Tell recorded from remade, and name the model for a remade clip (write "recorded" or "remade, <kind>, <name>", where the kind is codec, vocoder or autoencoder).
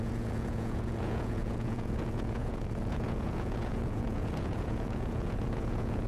remade, vocoder, Vocos